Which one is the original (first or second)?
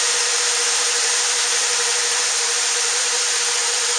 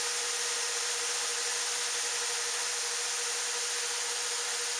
second